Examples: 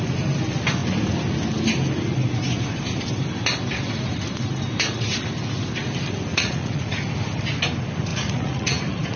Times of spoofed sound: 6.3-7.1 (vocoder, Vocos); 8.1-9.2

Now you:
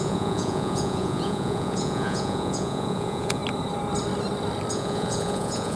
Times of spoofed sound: 0.0-3.4 (vocoder, Vocos); 4.7-5.8

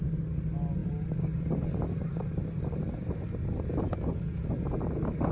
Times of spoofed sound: none

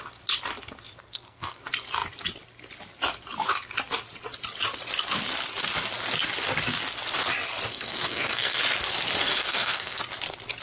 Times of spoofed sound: 1.0-1.6 (codec, SNAC); 7.7-8.6; 9.2-10.0

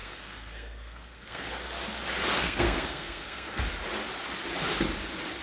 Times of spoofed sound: 0.0-1.5 (codec, SNAC); 2.2-3.6

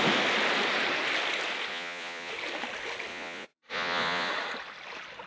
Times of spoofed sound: 1.7-2.3 (vocoder, Vocos); 3.1-4.3

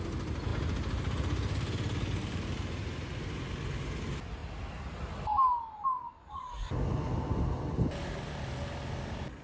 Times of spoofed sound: none